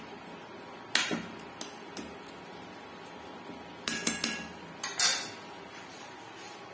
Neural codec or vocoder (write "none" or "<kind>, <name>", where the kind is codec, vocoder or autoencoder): none